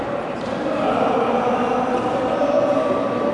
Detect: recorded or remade remade